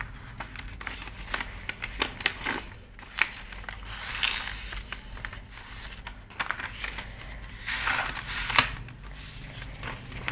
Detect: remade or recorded recorded